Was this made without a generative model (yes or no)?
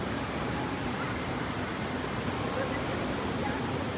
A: yes